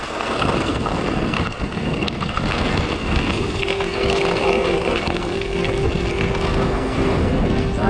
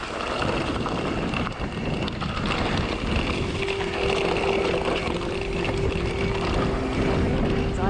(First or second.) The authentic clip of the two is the second